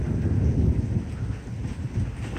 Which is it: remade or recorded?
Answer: recorded